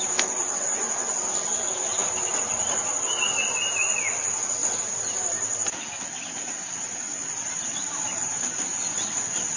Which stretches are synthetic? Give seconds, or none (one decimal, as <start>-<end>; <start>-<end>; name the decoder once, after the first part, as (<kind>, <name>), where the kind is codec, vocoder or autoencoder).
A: none